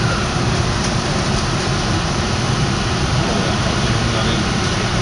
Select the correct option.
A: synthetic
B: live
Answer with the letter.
B